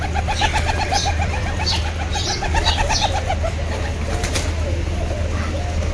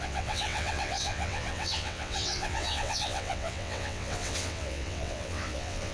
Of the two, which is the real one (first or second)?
first